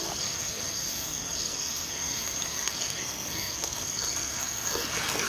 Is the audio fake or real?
fake